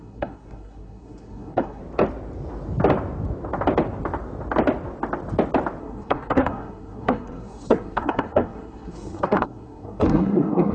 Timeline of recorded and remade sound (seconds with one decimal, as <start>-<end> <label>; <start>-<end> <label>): 0.0-1.8 remade; 1.8-5.8 recorded; 5.8-10.7 remade